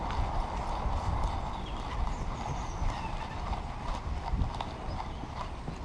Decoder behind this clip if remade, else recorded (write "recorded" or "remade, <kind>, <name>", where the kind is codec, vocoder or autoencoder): recorded